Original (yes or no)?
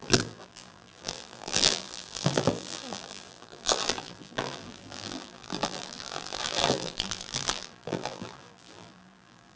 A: no